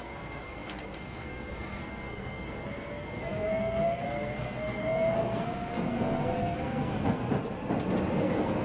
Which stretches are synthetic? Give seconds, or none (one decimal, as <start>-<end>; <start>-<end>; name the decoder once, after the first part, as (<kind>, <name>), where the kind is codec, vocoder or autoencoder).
0.0-7.2 (codec, SNAC); 8.2-8.6